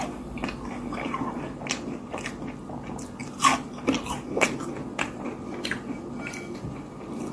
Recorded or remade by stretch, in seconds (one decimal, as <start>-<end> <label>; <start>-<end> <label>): 0.0-7.3 recorded

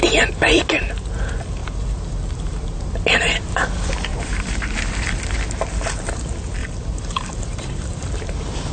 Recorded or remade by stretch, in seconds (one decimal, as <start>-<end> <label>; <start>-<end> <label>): 0.0-1.6 recorded; 1.6-2.9 remade; 2.9-4.1 recorded; 4.1-5.2 remade; 5.2-6.6 recorded; 6.6-8.1 remade; 8.1-8.7 recorded

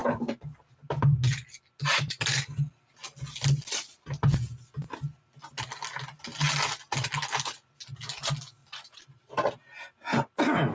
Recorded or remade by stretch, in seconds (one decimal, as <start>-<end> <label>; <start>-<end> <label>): 0.0-0.6 remade; 0.6-8.6 recorded; 8.6-9.5 remade; 9.5-10.7 recorded

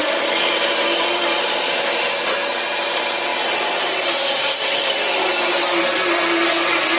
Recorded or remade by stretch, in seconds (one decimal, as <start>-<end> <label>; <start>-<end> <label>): 0.0-7.0 recorded

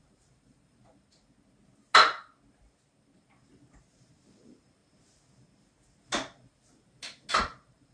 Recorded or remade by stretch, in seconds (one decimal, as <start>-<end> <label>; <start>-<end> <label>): 0.0-1.1 remade; 1.1-3.9 recorded; 3.9-4.8 remade; 4.8-7.3 recorded; 7.3-7.9 remade

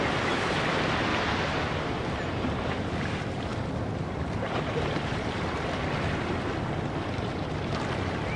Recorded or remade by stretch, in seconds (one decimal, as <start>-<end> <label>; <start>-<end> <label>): 0.0-3.5 recorded; 3.5-5.8 remade; 5.8-8.4 recorded